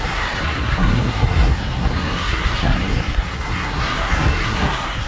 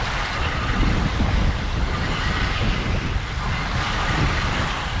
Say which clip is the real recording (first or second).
second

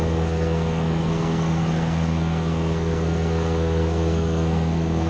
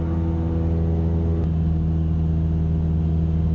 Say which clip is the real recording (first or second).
second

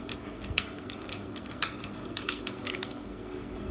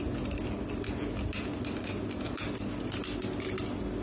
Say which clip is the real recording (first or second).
second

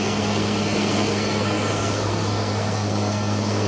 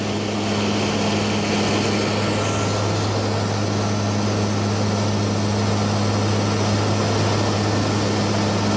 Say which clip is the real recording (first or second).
second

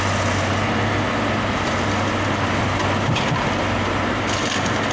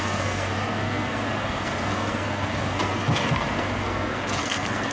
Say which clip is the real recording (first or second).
first